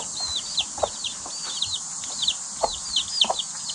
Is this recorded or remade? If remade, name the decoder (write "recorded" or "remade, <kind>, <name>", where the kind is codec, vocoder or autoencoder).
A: recorded